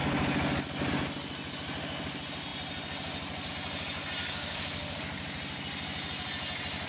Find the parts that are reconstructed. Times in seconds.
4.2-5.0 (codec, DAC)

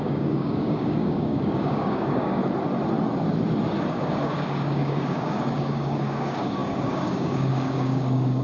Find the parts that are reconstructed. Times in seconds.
0.0-2.4 (codec, DAC); 3.9-8.4